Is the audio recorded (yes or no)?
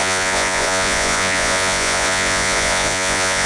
no